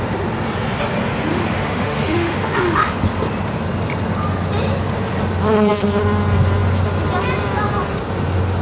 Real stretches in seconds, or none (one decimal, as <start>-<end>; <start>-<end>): 0.0-1.3; 2.9-8.6